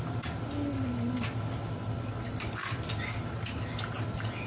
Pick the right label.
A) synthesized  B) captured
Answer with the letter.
B